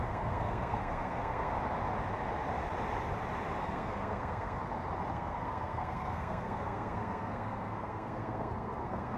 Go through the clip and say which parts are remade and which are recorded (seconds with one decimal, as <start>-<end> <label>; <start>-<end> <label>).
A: 0.0-1.5 remade; 1.5-3.6 recorded; 3.6-4.6 remade; 4.6-5.1 recorded; 5.1-9.2 remade